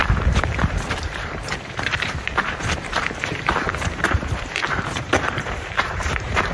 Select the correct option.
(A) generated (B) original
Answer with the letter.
A